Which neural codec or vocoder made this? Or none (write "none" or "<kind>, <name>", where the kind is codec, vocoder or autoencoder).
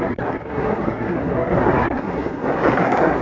codec, SNAC